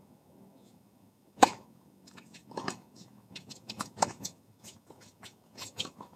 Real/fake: fake